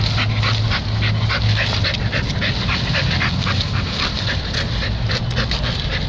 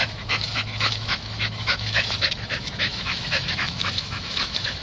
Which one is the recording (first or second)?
first